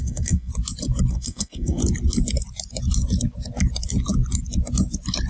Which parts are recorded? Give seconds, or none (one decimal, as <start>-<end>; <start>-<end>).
0.5-1.1; 1.8-5.3